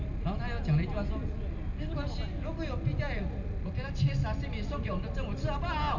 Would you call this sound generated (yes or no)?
no